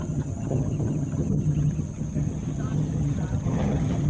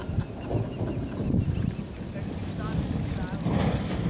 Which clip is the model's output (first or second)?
first